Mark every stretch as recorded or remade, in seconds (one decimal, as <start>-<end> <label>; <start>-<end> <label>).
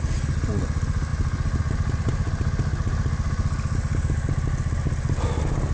0.0-5.7 recorded